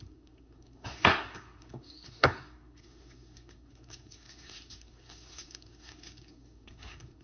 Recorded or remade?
remade